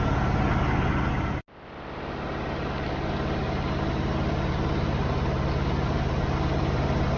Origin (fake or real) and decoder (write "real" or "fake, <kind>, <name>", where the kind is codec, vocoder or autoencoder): real